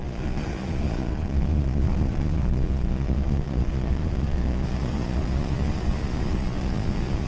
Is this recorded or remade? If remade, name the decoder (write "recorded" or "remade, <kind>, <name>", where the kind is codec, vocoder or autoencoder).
remade, vocoder, Vocos